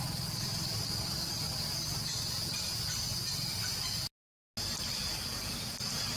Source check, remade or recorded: recorded